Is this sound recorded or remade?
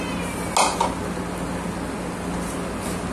recorded